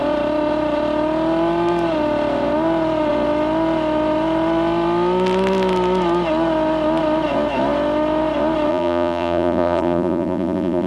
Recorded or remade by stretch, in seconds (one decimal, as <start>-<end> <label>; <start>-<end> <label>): 0.0-8.7 recorded; 8.7-10.9 remade